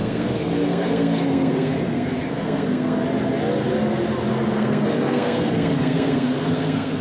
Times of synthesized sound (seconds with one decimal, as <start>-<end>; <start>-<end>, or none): 0.0-3.0; 4.3-7.0